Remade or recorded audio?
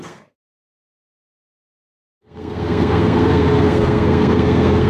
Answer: remade